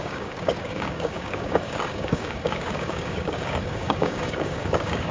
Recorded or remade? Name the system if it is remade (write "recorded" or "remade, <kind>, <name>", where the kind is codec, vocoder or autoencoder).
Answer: remade, codec, DAC